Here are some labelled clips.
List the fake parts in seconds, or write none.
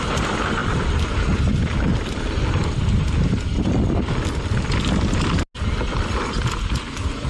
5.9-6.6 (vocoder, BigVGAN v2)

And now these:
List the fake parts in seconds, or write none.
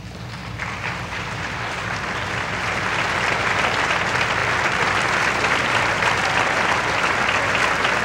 0.4-2.1 (vocoder, BigVGAN v2); 4.4-7.4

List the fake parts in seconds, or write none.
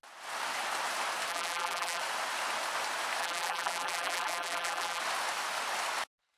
1.3-2.0 (vocoder, BigVGAN v2); 3.2-5.0